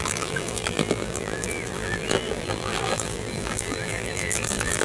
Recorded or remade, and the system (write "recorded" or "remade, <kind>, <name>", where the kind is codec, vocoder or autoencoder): remade, vocoder, BigVGAN v2